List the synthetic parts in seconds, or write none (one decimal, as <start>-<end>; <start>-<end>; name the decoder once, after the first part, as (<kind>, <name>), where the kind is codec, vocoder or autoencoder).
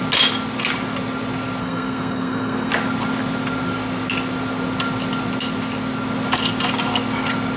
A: 1.6-2.7 (codec, SNAC)